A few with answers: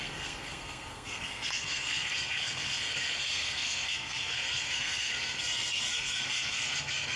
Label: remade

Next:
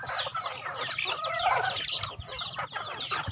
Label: recorded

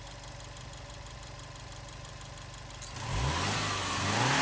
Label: recorded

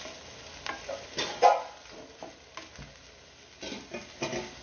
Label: recorded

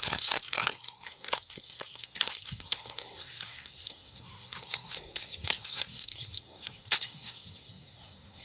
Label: remade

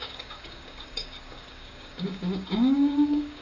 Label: remade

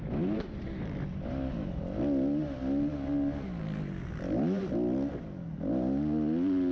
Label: recorded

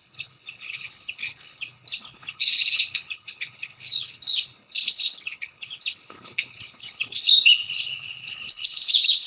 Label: remade